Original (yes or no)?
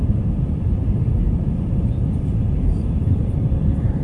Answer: no